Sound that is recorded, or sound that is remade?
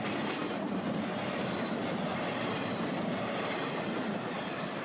remade